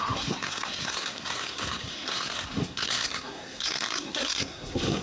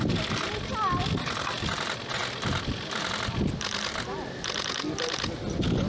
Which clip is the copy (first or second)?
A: first